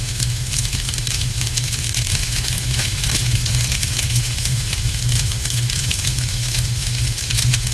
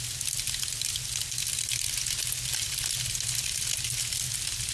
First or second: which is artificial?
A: first